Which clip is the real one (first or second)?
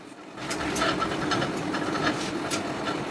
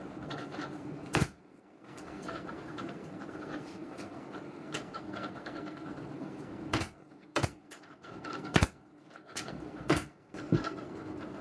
first